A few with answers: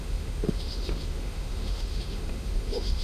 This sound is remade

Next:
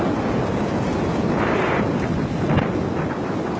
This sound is recorded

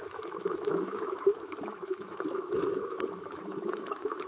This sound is remade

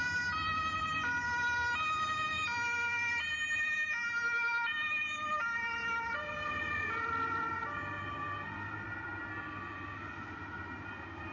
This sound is recorded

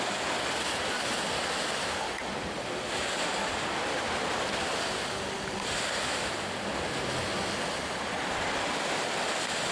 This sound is recorded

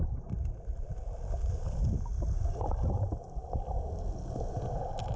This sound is recorded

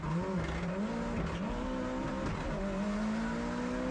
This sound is recorded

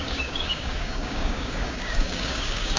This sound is remade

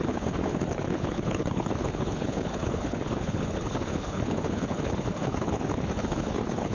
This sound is remade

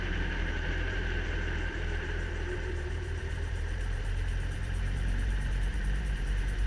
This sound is remade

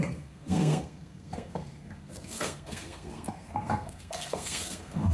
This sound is remade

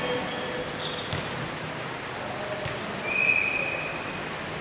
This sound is recorded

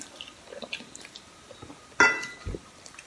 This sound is recorded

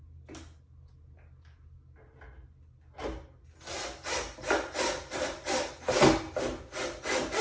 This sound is recorded